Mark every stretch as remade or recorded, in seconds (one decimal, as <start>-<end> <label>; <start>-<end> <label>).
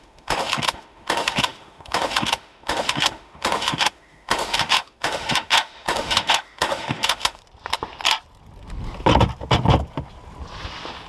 0.0-7.4 remade; 7.4-11.1 recorded